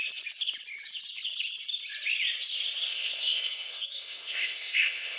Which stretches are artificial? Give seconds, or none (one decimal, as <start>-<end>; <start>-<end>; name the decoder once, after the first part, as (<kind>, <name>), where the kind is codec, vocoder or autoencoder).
2.9-5.2 (codec, SNAC)